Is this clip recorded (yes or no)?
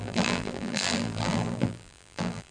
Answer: no